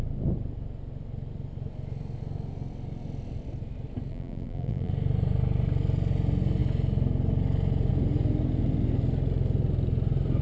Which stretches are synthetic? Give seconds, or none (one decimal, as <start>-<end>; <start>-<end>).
4.1-4.9